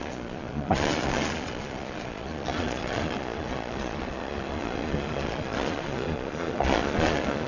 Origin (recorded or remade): remade